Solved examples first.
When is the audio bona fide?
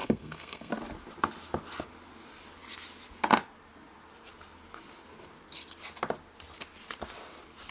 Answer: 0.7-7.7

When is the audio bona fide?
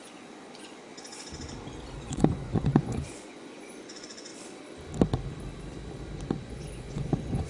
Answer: 0.9-2.0; 4.3-6.4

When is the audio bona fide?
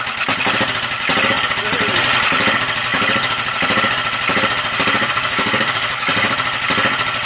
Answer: 0.0-5.0; 6.3-7.3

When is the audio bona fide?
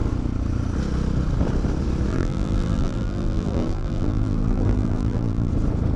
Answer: 0.0-2.1; 5.5-6.0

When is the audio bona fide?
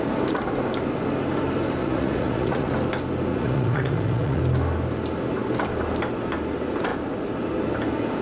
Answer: 0.0-1.8; 2.7-3.3; 4.4-8.2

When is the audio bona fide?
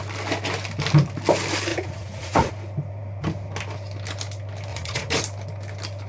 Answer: 0.0-1.7; 2.5-4.7; 5.2-6.1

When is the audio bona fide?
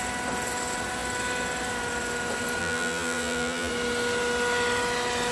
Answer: 0.0-2.6; 3.7-5.3